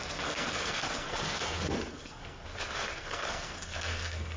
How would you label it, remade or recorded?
remade